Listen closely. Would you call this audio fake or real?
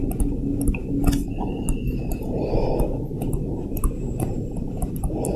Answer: real